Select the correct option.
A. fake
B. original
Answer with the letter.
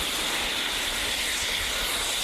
B